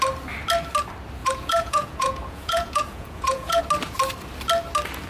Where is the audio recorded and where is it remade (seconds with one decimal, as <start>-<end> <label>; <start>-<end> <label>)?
0.0-1.2 recorded; 1.2-3.6 remade; 3.6-5.1 recorded